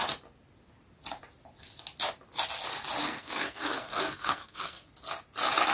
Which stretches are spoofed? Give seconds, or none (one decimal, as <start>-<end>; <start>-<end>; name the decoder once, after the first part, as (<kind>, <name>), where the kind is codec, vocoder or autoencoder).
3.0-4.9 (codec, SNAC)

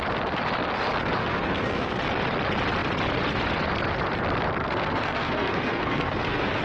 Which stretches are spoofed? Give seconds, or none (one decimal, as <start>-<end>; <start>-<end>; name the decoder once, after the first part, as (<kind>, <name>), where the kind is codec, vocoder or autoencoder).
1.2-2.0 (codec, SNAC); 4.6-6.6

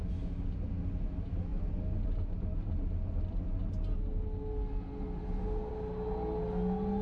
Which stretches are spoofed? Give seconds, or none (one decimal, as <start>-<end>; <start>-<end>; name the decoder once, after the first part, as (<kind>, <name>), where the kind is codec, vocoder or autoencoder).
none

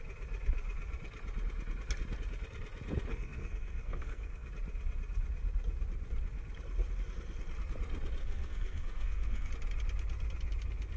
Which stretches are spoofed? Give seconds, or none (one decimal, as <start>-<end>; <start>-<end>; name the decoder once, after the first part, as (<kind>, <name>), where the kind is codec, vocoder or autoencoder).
3.1-4.5 (codec, SNAC); 8.2-9.5

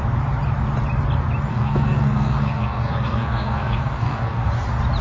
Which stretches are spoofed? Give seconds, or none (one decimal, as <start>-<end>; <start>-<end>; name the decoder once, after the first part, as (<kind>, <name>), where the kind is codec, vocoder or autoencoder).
1.5-4.5 (codec, SNAC)